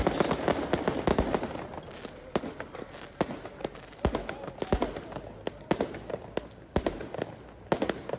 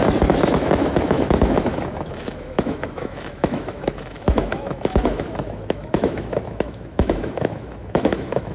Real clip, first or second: first